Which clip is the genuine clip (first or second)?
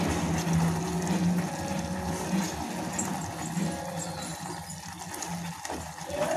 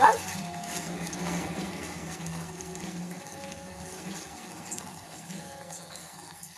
first